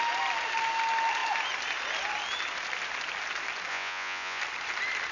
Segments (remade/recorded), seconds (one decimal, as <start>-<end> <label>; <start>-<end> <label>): 0.0-3.7 recorded; 3.7-4.4 remade; 4.4-5.1 recorded